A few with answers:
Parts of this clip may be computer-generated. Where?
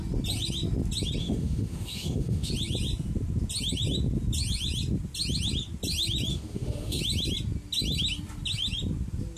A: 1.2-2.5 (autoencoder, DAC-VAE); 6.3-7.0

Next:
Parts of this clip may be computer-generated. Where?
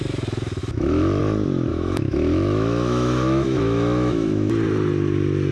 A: 0.6-1.2 (autoencoder, DAC-VAE); 1.7-4.5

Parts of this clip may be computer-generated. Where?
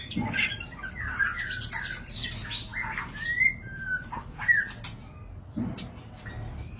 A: none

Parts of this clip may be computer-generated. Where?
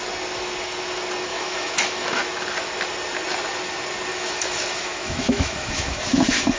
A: 1.3-2.2 (autoencoder, DAC-VAE); 4.1-6.6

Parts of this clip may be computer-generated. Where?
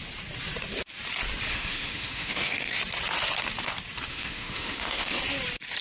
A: 1.5-2.8 (autoencoder, DAC-VAE); 4.1-5.2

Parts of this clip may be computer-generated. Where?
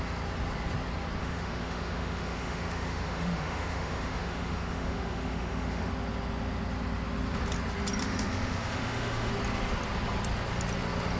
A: 1.2-5.9 (autoencoder, DAC-VAE); 8.0-9.3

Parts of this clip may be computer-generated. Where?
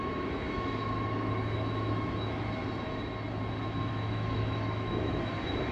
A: 0.0-2.6 (autoencoder, DAC-VAE); 3.9-5.7